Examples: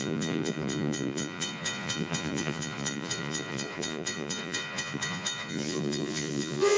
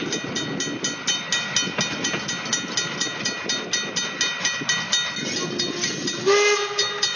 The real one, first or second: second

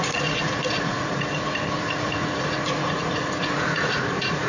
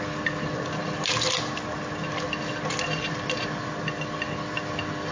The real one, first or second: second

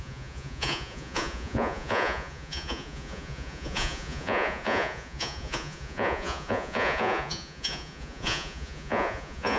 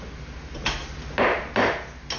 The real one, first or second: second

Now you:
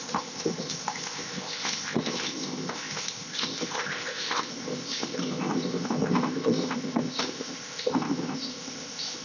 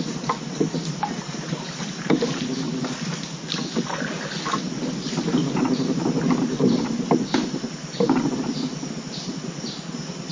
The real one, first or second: second